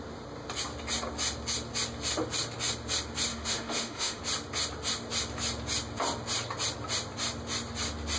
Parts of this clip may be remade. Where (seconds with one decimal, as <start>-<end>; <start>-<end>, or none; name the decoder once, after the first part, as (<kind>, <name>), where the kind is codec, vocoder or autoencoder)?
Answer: 3.3-4.2 (autoencoder, DAC-VAE)